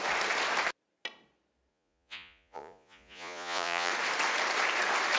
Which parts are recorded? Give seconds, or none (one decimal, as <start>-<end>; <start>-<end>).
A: 0.0-1.7; 3.9-5.2